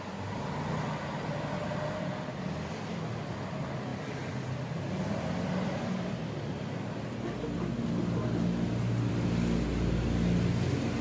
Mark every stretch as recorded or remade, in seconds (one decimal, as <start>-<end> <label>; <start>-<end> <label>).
0.0-1.6 recorded; 1.6-2.1 remade; 2.1-11.0 recorded

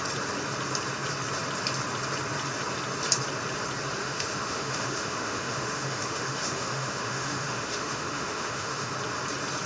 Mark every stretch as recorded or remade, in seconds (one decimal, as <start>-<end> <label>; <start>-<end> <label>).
0.0-4.0 recorded; 4.0-8.9 remade; 8.9-9.7 recorded

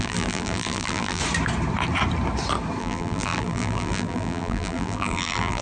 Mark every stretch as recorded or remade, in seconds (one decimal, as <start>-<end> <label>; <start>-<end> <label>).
0.0-1.2 remade; 1.2-2.8 recorded; 2.8-5.6 remade

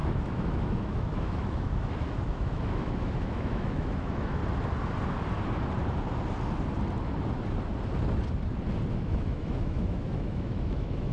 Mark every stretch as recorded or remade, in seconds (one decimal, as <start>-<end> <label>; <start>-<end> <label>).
0.0-4.4 remade; 4.4-8.9 recorded; 8.9-11.1 remade

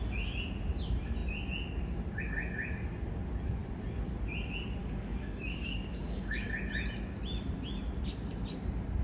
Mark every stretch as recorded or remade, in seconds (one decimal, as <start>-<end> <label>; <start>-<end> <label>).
0.0-4.8 recorded; 4.8-6.5 remade; 6.5-9.0 recorded

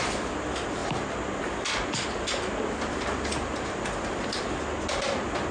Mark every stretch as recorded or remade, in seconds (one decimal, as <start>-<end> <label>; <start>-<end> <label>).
0.0-5.5 recorded

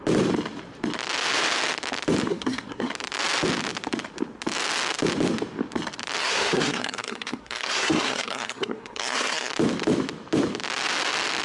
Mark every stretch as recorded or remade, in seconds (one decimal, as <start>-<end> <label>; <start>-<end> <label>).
0.0-2.3 recorded; 2.3-2.9 remade; 2.9-6.2 recorded; 6.2-9.5 remade; 9.5-11.4 recorded